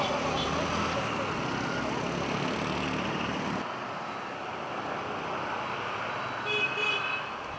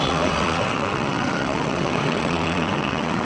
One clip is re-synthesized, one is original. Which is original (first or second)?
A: first